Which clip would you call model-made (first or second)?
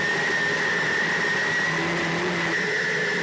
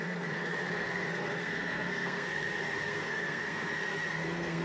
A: second